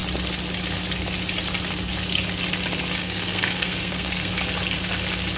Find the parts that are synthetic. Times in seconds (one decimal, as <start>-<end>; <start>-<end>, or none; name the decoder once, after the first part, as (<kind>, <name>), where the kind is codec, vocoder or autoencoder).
3.0-4.3 (codec, SNAC)